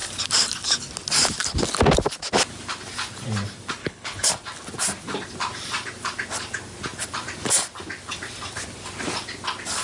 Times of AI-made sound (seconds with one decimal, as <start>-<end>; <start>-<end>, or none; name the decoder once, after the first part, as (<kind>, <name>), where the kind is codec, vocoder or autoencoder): 3.8-4.3 (codec, HILCodec)

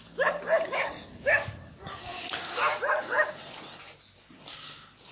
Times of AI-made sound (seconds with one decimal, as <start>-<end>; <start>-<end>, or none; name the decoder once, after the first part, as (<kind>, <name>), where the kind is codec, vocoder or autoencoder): none

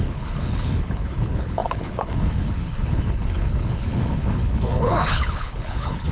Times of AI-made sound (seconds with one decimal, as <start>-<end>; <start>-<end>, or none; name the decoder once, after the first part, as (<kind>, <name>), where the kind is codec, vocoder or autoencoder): 0.0-6.1 (codec, HILCodec)

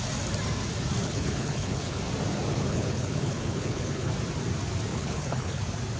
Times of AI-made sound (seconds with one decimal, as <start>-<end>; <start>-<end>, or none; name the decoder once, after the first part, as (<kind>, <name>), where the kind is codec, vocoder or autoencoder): 1.0-2.0 (codec, HILCodec); 2.5-4.1; 4.9-5.6

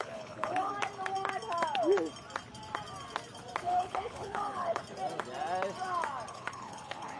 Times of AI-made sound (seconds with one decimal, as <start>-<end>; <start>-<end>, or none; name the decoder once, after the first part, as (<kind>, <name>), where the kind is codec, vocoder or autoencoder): 0.0-0.7 (codec, HILCodec); 3.6-4.8; 6.3-7.2

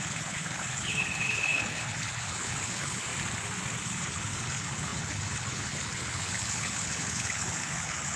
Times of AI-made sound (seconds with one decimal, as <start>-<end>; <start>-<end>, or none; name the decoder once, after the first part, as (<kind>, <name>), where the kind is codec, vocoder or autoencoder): 0.0-3.1 (codec, HILCodec); 3.8-8.2

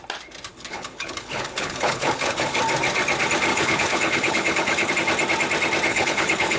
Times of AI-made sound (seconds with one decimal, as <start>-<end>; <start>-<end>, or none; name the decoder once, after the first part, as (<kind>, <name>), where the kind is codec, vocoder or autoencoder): 0.5-2.6 (codec, HILCodec); 3.5-4.9; 5.9-6.6